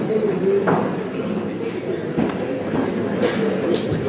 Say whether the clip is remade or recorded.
recorded